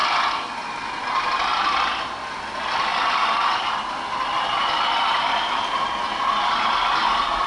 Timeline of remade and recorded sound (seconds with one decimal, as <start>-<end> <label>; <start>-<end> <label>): 0.0-7.5 recorded

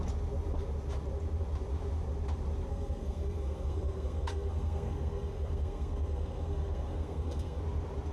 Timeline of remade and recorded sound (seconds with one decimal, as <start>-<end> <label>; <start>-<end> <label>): 0.0-2.7 recorded; 2.7-7.6 remade; 7.6-8.1 recorded

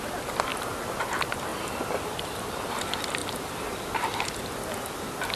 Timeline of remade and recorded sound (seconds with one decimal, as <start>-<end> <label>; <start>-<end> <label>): 0.0-1.5 recorded; 1.5-2.8 remade; 2.8-3.2 recorded; 3.2-3.9 remade; 3.9-5.4 recorded

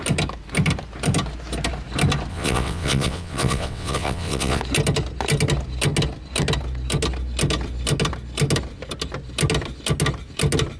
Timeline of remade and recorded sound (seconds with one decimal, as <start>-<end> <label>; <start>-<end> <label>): 0.0-2.3 recorded; 2.3-4.6 remade; 4.6-10.8 recorded